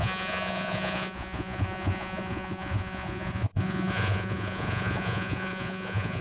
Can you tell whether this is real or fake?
fake